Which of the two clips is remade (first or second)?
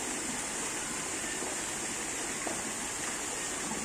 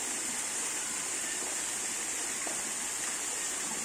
second